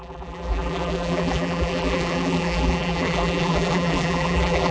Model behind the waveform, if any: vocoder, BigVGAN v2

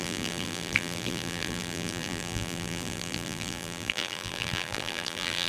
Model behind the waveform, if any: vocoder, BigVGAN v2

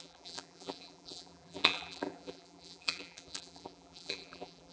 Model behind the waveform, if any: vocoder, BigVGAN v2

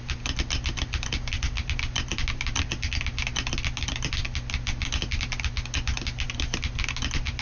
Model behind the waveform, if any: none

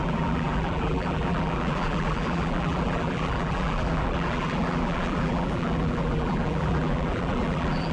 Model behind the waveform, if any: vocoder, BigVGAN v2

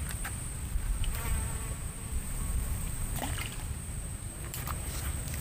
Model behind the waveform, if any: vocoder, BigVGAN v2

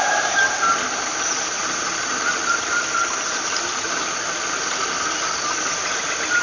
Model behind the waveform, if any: none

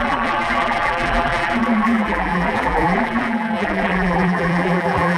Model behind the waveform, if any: vocoder, BigVGAN v2